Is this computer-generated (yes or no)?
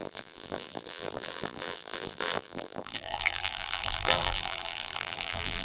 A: yes